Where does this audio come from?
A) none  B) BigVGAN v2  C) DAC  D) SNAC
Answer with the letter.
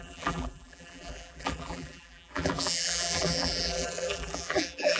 B